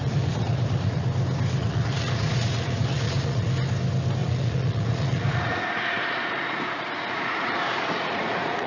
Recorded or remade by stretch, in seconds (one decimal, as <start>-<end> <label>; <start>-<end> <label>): 0.0-1.0 remade; 1.0-1.6 recorded; 1.6-3.5 remade; 3.5-4.2 recorded; 4.2-8.7 remade